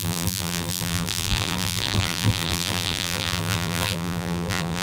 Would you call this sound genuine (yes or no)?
no